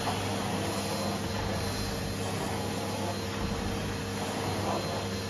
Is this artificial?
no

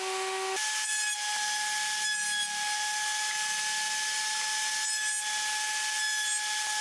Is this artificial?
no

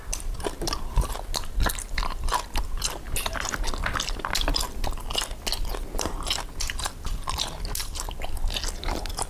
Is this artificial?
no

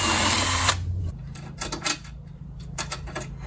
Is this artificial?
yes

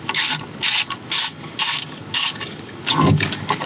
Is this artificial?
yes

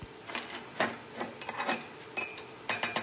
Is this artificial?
no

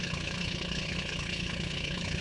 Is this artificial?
yes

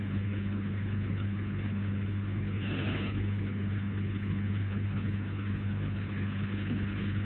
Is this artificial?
yes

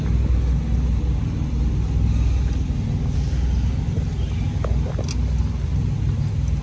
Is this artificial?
no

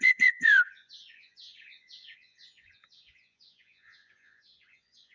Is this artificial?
yes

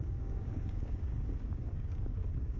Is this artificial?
yes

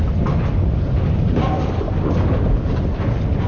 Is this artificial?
no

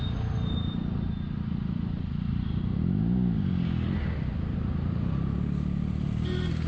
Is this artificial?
no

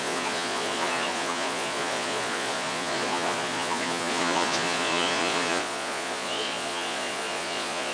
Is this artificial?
yes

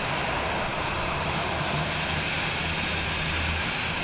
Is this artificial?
no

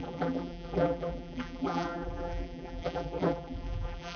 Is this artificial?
yes